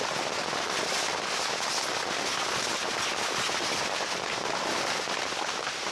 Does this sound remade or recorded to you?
recorded